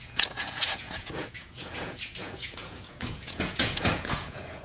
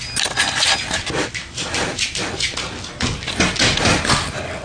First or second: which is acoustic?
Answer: second